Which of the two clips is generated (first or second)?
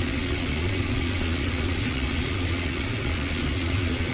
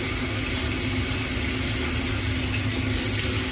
first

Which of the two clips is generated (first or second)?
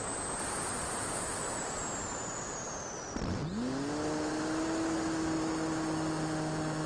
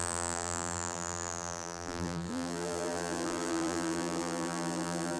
second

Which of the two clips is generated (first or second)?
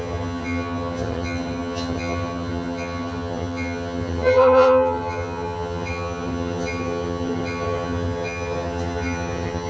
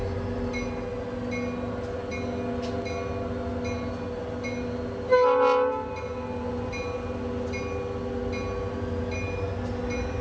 first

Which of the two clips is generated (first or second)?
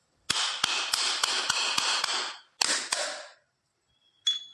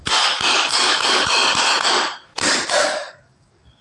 second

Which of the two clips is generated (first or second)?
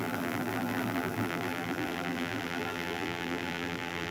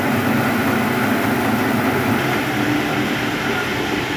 first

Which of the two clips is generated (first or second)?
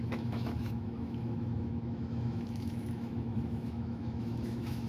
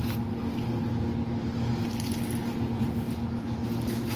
first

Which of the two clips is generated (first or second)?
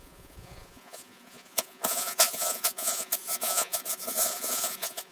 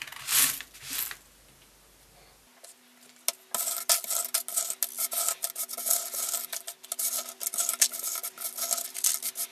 first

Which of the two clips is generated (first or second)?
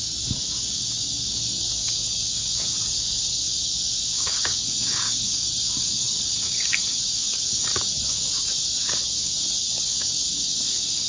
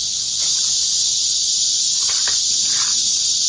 first